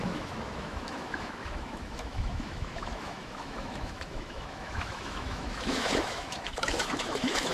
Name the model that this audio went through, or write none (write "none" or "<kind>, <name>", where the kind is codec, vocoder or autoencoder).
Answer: autoencoder, DAC-VAE